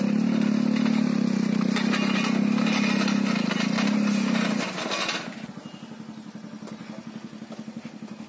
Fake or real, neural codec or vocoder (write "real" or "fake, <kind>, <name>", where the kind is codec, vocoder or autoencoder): real